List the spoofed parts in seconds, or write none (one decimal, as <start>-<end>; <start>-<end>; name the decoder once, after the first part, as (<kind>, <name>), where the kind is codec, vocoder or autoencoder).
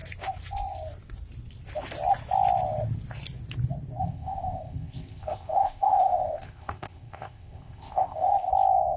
4.0-8.5 (codec, ZipCodec)